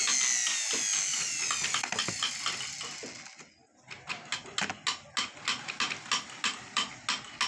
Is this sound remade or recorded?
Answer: recorded